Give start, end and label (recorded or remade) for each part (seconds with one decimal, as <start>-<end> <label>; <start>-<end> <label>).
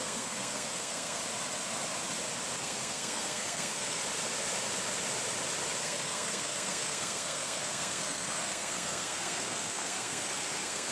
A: 0.0-1.2 remade; 1.2-2.6 recorded; 2.6-4.0 remade; 4.0-5.8 recorded; 5.8-10.9 remade